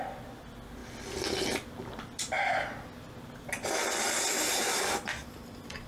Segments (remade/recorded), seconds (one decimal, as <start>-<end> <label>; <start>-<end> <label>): 0.0-5.9 recorded